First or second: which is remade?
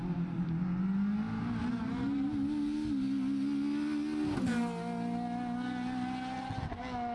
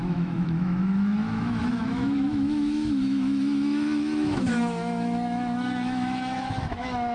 second